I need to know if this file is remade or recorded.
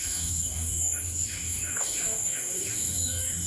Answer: remade